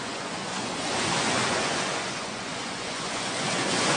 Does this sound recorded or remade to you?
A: remade